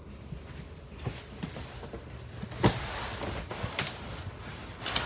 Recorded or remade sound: remade